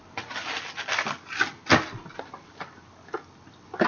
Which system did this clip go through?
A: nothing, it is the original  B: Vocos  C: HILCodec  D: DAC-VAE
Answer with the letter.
A